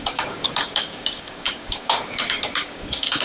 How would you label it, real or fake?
fake